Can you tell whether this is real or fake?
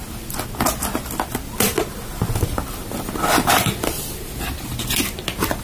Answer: real